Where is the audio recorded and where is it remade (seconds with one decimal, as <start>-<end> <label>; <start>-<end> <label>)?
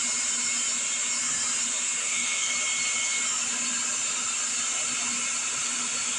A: 0.0-2.0 recorded; 2.0-2.5 remade; 2.5-6.2 recorded